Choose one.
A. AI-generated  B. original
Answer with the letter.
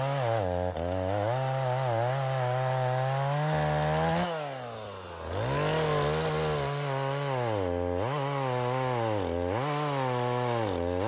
B